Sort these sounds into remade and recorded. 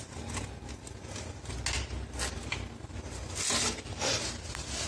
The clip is recorded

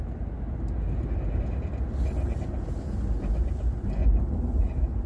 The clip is recorded